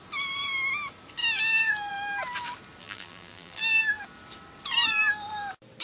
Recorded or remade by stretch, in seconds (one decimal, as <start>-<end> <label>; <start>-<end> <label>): 0.0-2.8 recorded; 2.8-3.6 remade; 3.6-5.8 recorded